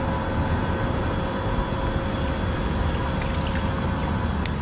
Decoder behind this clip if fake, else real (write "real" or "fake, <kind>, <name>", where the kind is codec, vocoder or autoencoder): real